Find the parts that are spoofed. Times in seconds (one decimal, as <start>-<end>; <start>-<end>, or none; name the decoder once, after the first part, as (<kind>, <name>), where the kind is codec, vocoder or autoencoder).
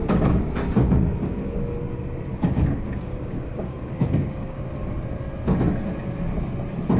0.0-1.8 (codec, DAC); 2.3-4.6